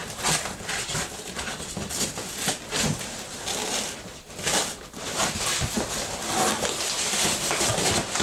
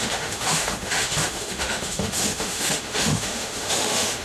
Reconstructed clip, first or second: second